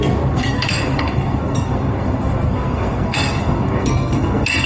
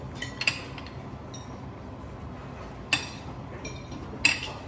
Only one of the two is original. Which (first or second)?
second